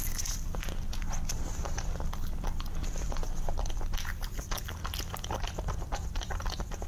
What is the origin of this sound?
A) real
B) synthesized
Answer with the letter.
B